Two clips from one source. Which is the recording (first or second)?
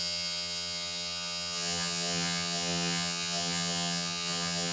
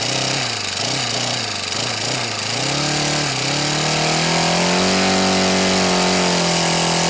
second